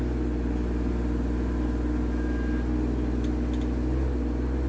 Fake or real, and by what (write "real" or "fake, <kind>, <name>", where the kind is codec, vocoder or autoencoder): real